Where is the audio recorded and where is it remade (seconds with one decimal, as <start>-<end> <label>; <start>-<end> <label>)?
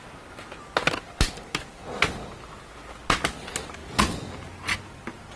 0.0-5.4 recorded